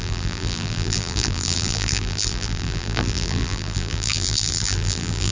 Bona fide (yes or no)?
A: no